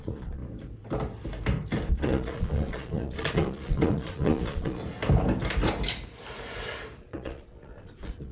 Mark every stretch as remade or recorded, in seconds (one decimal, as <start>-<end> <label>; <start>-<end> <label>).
0.0-0.4 remade; 0.4-1.9 recorded; 1.9-4.8 remade; 4.8-7.0 recorded; 7.0-8.3 remade

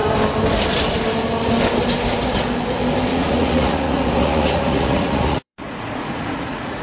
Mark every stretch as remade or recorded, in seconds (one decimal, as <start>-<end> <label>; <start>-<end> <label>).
0.0-3.1 recorded; 3.1-6.8 remade

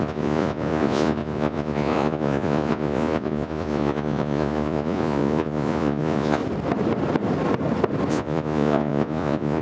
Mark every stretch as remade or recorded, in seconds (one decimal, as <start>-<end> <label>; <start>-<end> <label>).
0.0-6.4 remade; 6.4-8.1 recorded; 8.1-9.6 remade

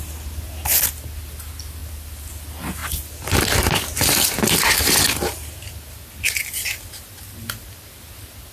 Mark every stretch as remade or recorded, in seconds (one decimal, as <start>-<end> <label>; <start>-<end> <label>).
0.0-8.5 recorded

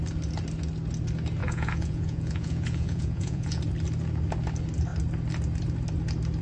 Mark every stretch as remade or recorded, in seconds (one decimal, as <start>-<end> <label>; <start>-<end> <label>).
0.0-1.4 recorded; 1.4-3.6 remade; 3.6-6.4 recorded

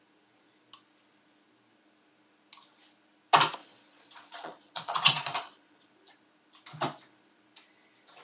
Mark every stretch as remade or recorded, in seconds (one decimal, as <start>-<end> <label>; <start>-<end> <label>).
0.0-3.6 recorded; 3.6-5.9 remade; 5.9-8.2 recorded

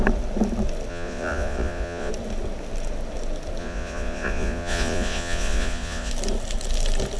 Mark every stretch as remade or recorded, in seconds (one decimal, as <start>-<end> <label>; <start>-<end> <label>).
0.0-0.9 recorded; 0.9-2.1 remade; 2.1-3.6 recorded; 3.6-6.1 remade; 6.1-7.2 recorded